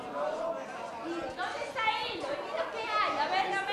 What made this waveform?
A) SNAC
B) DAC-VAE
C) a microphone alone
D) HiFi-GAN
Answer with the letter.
C